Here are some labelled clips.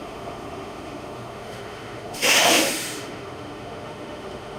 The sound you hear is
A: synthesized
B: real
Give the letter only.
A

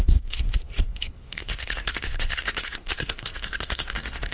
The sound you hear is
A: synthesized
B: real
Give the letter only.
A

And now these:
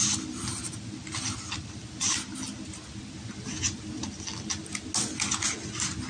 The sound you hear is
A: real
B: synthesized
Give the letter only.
A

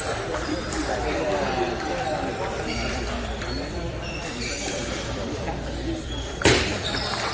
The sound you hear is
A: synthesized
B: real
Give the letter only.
A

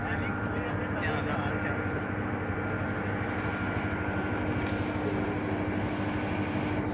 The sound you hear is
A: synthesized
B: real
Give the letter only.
B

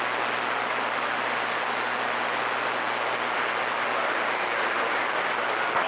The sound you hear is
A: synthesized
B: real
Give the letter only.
B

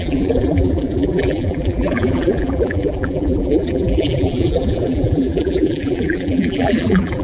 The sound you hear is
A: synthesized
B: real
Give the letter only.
A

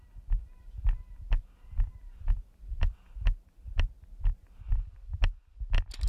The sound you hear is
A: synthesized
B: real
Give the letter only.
B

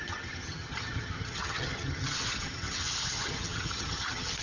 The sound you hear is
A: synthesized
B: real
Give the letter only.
A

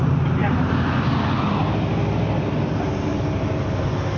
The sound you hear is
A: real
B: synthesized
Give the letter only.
A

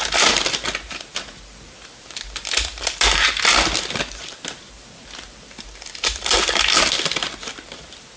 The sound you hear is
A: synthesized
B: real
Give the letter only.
A